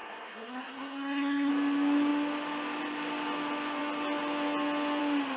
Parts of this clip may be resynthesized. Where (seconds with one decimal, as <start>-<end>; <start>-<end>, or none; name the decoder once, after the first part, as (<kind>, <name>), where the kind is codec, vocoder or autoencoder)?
0.0-1.5 (codec, SNAC)